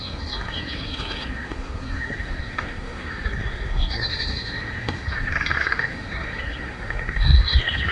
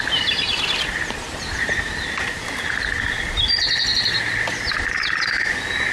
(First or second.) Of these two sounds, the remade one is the first